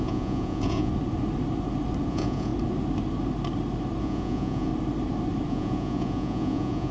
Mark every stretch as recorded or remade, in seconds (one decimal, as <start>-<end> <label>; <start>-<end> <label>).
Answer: 0.0-0.9 remade; 0.9-2.1 recorded; 2.1-2.5 remade; 2.5-4.0 recorded; 4.0-4.7 remade; 4.7-5.5 recorded; 5.5-6.9 remade